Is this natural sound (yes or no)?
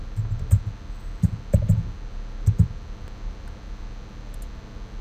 yes